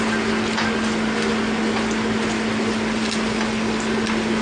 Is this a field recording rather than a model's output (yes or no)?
yes